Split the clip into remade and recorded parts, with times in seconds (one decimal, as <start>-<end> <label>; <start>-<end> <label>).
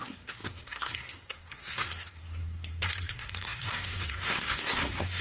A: 0.0-5.2 remade